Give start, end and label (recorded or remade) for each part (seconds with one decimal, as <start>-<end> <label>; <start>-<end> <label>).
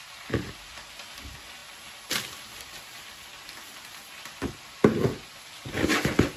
0.0-6.4 recorded